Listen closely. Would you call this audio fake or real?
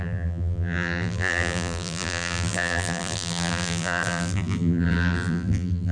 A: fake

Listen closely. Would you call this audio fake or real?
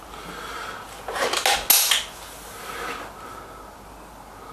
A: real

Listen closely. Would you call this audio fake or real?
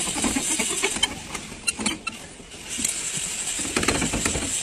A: real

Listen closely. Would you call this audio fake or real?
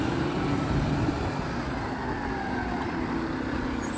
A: real